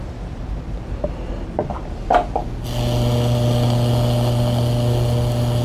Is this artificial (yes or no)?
no